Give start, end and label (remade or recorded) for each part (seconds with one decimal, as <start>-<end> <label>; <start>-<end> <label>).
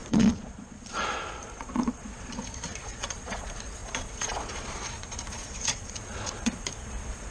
0.0-7.3 remade